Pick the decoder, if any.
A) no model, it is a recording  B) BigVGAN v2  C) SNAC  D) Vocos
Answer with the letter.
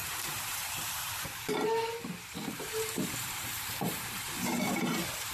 B